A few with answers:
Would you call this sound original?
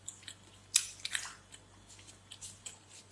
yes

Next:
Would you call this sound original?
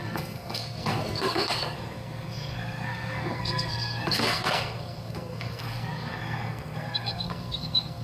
no